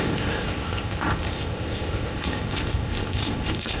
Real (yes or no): no